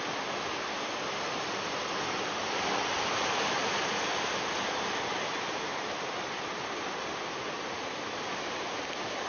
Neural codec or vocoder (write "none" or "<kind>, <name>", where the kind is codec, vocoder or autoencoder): none